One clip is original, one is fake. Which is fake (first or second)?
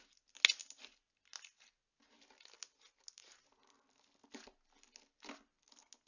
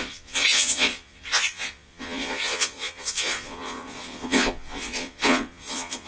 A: second